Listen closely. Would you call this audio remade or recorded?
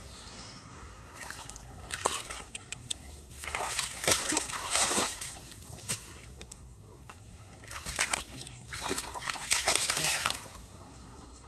remade